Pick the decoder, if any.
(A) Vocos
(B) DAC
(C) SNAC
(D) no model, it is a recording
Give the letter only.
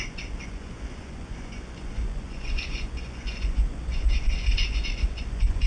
A